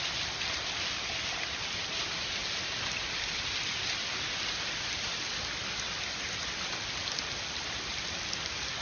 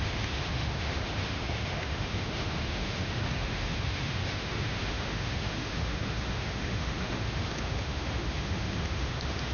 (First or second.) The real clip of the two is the first